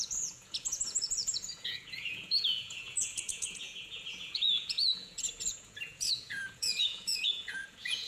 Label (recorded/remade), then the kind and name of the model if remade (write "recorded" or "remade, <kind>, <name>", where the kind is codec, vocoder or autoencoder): remade, vocoder, Vocos